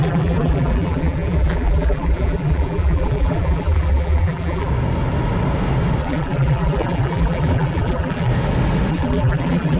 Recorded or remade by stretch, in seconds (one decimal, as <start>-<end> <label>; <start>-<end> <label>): 0.0-4.7 remade; 4.7-6.0 recorded; 6.0-8.3 remade; 8.3-8.9 recorded; 8.9-9.8 remade